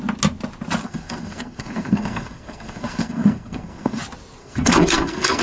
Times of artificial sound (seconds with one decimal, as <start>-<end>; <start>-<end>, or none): 0.8-4.0; 4.4-5.4

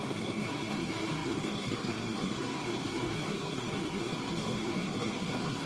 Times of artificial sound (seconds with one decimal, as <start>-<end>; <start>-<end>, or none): 0.0-5.7

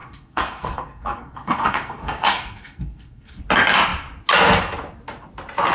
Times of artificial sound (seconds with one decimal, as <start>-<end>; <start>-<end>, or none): 0.0-3.4